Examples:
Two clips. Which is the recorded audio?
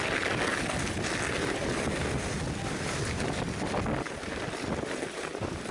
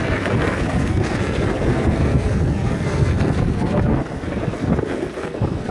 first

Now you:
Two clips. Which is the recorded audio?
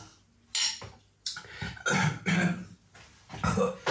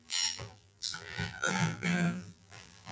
first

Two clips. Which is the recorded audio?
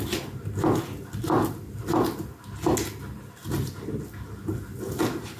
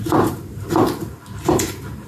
first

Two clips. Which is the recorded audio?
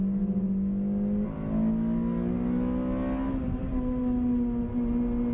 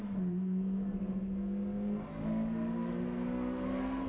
first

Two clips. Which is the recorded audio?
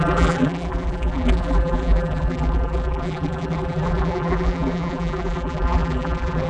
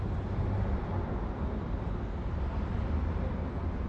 second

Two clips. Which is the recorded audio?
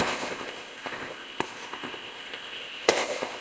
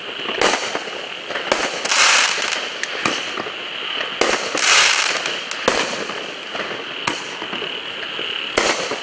second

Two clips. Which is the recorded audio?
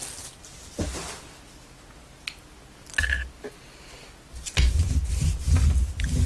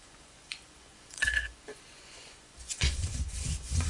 first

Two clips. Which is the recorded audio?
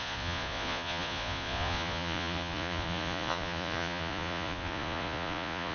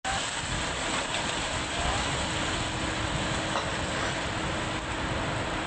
second